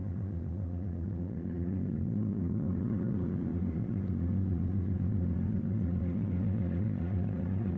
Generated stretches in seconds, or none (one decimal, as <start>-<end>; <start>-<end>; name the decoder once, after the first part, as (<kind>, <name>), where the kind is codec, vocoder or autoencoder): 0.0-7.8 (vocoder, Vocos)